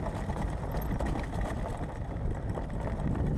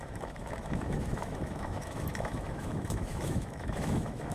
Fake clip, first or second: second